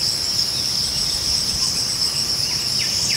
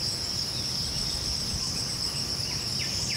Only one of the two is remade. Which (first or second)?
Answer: first